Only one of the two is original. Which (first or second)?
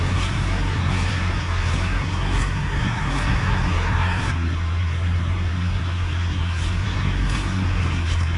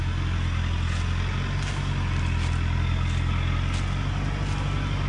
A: second